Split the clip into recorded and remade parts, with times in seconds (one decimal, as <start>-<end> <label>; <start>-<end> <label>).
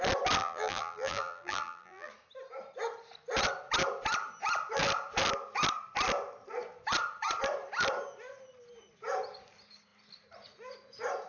0.0-0.4 recorded; 0.4-2.1 remade; 2.1-11.3 recorded